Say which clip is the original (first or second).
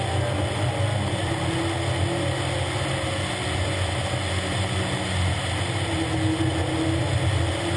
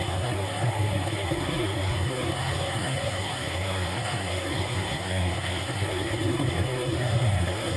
first